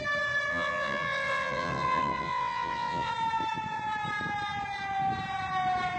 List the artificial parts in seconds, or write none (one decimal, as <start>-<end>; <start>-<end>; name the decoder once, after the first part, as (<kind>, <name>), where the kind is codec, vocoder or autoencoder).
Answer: 0.5-3.1 (vocoder, WaveNeXt)